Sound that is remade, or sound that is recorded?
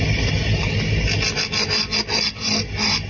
recorded